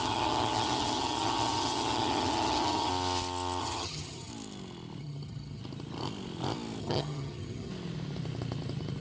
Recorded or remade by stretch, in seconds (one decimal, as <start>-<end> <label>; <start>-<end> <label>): 0.0-2.9 remade; 2.9-3.6 recorded; 3.6-4.3 remade; 4.3-5.0 recorded; 5.0-5.6 remade; 5.6-6.8 recorded; 6.8-7.7 remade; 7.7-9.0 recorded